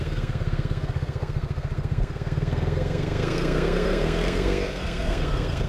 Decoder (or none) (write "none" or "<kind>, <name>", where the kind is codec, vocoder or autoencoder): codec, SNAC